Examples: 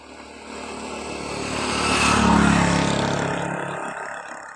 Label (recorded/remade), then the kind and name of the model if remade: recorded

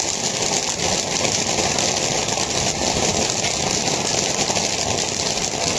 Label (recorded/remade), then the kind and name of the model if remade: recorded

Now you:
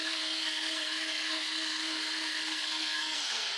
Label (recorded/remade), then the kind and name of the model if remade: remade, codec, SNAC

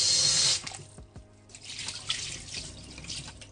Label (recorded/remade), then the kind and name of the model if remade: recorded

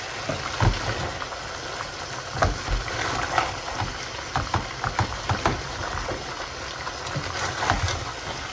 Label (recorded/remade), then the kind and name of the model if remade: recorded